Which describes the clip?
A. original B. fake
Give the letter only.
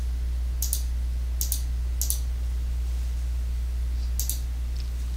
A